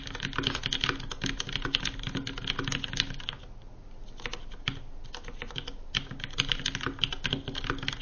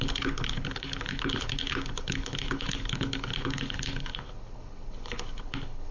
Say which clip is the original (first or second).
first